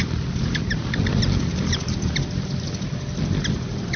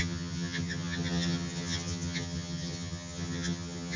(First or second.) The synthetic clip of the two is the second